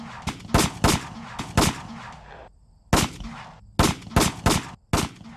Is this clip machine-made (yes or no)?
no